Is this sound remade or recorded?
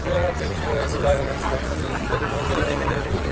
remade